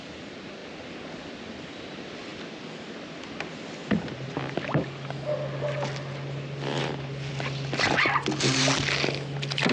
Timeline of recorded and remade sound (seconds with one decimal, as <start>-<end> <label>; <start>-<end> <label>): 0.0-9.7 recorded